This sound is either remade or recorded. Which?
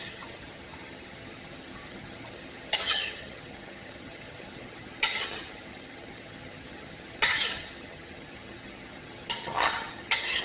remade